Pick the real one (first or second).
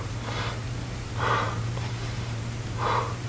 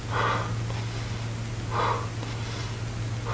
second